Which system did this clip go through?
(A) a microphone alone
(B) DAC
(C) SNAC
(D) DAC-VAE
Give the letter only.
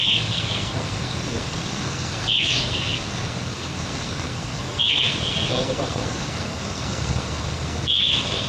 C